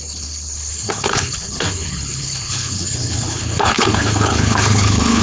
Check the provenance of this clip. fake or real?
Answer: fake